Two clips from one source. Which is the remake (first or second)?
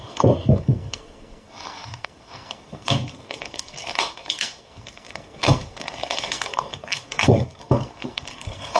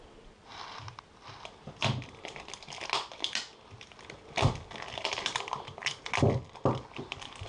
first